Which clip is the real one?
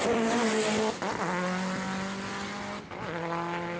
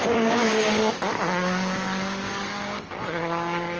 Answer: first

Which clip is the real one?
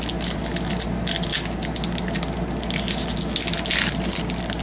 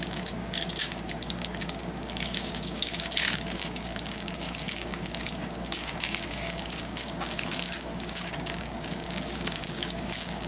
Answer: first